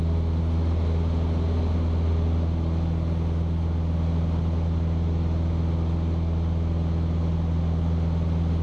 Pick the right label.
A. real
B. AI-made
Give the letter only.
A